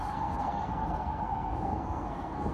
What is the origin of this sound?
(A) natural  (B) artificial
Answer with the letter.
B